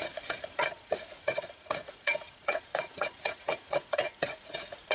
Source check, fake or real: fake